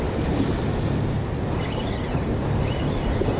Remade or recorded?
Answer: recorded